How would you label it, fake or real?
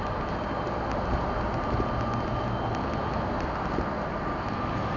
real